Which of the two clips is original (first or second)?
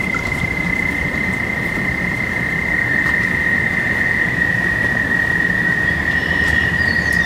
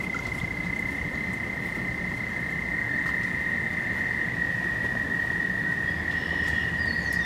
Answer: second